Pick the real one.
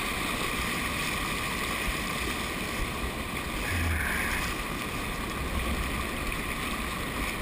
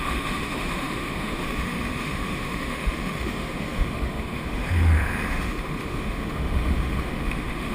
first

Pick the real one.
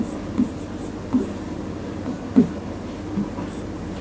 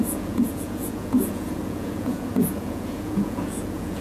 first